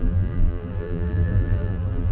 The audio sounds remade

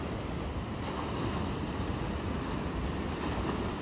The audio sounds remade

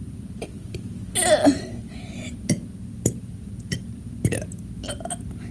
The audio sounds recorded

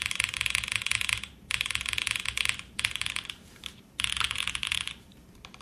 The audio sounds remade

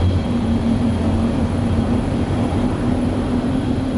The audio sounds remade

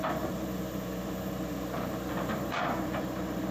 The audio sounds remade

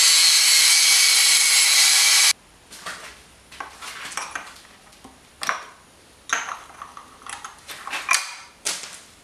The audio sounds recorded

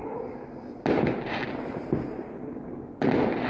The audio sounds recorded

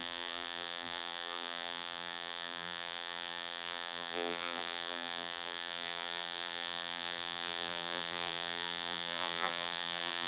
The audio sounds remade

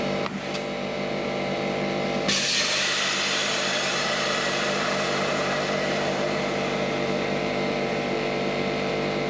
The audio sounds remade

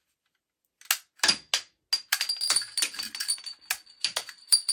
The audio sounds recorded